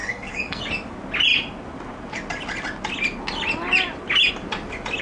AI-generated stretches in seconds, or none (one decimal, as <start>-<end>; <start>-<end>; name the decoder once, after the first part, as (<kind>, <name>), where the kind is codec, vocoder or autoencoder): 0.0-0.6 (codec, SNAC)